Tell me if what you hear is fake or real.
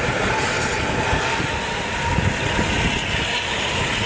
real